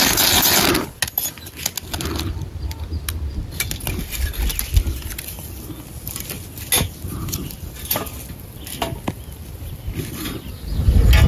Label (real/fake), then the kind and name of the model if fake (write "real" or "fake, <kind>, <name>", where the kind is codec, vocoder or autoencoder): real